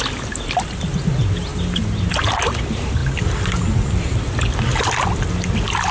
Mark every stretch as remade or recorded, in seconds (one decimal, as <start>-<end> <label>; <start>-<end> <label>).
0.0-5.9 recorded